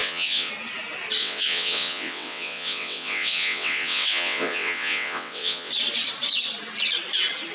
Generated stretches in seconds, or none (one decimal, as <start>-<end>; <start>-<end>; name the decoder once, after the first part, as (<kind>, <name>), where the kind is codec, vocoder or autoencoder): 0.0-0.5 (vocoder, WaveNeXt); 1.2-5.7